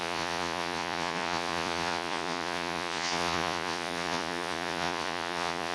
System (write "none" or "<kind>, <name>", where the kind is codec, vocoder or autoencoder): vocoder, Vocos